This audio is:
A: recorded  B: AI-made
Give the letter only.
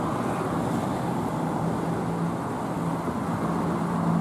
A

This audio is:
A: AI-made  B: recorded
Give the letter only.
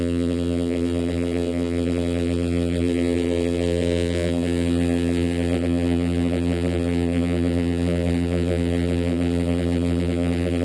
A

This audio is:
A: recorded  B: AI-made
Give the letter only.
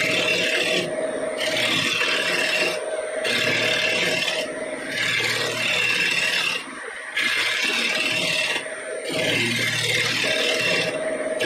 A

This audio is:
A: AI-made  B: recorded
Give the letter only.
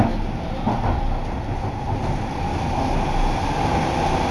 B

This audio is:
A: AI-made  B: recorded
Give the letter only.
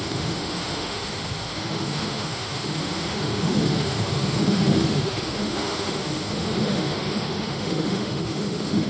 A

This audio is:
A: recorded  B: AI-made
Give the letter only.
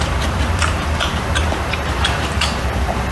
B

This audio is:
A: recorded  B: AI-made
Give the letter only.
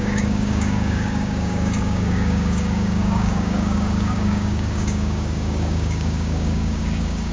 B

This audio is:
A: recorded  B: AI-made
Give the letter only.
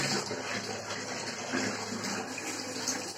A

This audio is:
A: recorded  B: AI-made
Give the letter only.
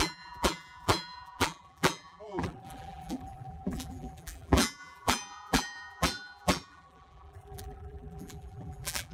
B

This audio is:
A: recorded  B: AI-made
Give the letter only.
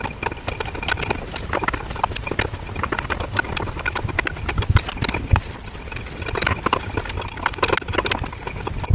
A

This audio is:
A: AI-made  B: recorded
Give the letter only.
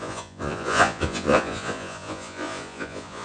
A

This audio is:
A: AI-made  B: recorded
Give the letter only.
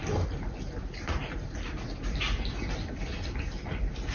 B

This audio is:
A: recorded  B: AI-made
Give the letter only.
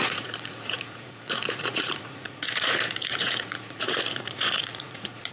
B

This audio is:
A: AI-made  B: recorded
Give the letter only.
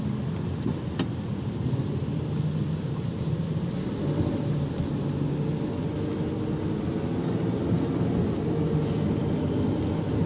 B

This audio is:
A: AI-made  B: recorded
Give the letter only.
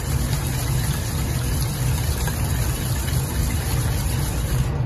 B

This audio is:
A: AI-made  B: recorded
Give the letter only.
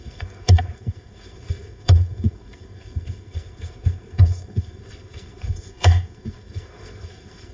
A